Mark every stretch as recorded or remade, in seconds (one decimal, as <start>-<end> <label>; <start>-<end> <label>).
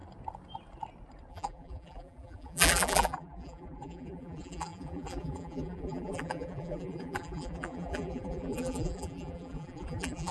0.0-1.3 recorded; 1.3-10.3 remade